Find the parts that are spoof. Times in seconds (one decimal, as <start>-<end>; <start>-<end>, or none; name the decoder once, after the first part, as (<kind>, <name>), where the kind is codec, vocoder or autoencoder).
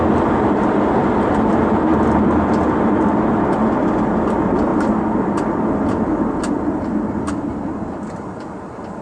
none